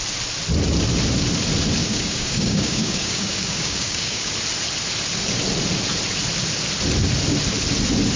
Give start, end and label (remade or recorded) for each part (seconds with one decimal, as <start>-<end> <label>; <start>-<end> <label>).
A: 0.0-1.8 recorded; 1.8-4.3 remade; 4.3-8.2 recorded